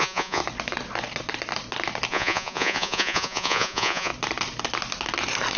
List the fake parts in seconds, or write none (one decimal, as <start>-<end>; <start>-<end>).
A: 0.0-0.4; 2.1-4.1